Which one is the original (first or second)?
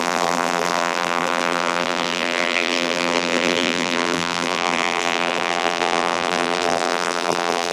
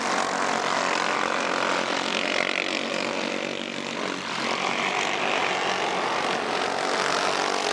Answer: second